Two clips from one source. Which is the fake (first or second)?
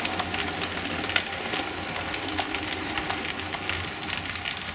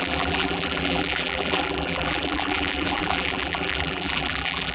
second